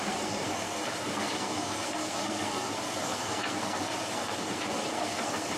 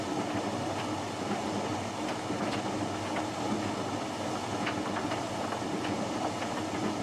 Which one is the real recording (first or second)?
second